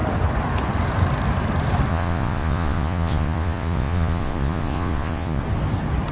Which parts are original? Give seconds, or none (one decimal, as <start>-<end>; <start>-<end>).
0.0-1.9; 5.4-6.1